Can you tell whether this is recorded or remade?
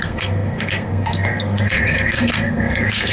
remade